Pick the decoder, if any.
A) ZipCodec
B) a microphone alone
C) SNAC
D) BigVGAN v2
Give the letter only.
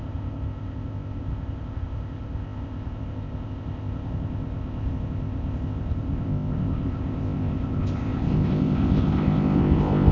A